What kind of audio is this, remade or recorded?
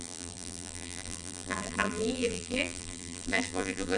remade